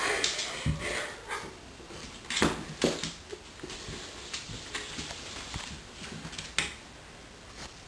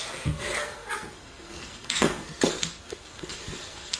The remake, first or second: second